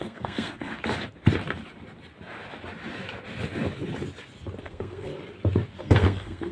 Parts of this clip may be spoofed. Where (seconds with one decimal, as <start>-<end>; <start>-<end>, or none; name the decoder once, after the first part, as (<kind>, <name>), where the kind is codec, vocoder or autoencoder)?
0.0-0.7 (codec, SNAC); 4.6-5.1; 5.8-6.5